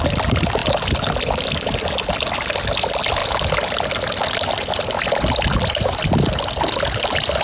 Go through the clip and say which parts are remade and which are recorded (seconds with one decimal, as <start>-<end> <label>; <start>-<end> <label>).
0.0-7.4 recorded